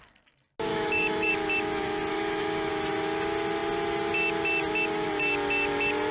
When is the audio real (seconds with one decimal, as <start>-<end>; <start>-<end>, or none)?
0.0-0.7; 1.3-2.1; 2.7-6.1